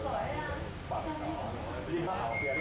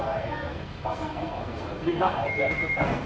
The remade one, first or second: second